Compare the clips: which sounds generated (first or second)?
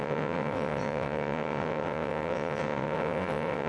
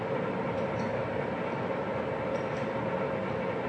first